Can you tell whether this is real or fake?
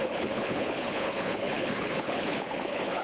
fake